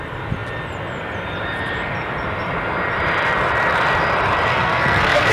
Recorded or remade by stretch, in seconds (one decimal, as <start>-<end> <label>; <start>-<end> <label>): 0.0-4.5 recorded; 4.5-5.3 remade